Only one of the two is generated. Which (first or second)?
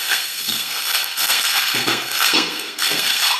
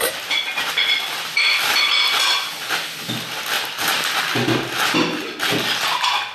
first